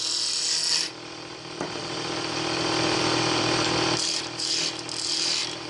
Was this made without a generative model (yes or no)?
no